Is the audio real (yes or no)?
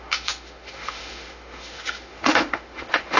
no